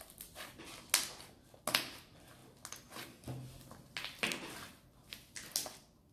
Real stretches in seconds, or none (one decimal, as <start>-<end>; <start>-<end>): 0.0-6.1